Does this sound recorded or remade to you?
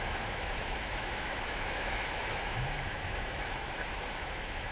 remade